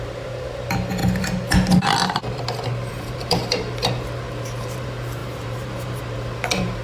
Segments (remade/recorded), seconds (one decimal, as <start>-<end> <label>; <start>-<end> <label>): 0.0-1.0 remade; 1.0-2.9 recorded; 2.9-6.8 remade